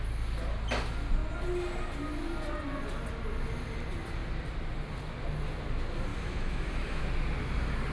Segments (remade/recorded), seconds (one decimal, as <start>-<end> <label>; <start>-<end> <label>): 0.0-6.1 recorded; 6.1-7.0 remade; 7.0-7.9 recorded